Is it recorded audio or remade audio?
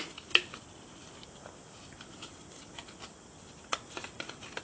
recorded